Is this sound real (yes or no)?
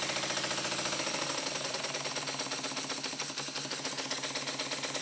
yes